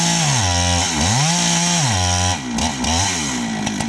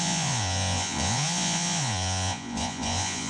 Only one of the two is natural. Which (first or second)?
first